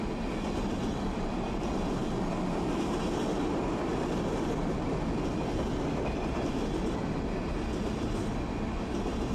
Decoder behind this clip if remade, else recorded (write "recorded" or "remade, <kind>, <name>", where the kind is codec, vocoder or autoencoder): recorded